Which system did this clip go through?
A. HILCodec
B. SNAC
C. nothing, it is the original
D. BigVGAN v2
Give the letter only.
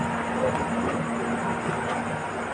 C